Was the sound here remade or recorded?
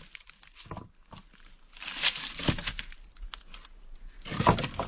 recorded